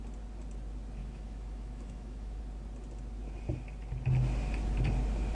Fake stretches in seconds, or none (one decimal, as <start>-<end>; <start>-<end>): 1.0-2.4